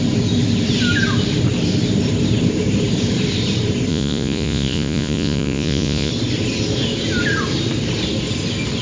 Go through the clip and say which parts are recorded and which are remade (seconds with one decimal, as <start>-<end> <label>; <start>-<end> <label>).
0.0-3.9 recorded; 3.9-6.1 remade; 6.1-8.8 recorded